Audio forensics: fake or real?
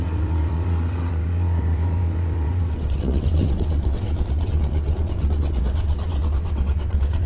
fake